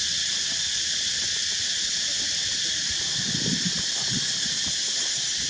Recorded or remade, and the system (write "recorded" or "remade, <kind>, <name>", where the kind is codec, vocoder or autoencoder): recorded